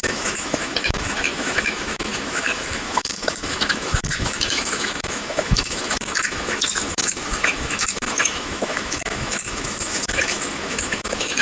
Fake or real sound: fake